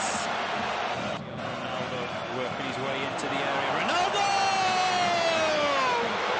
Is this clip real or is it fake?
real